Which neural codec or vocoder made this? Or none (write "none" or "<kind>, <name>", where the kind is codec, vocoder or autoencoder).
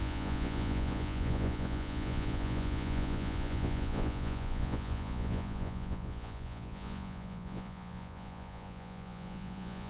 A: vocoder, Vocos